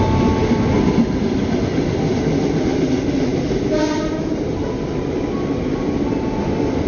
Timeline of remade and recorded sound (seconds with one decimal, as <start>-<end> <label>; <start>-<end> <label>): 0.0-6.9 recorded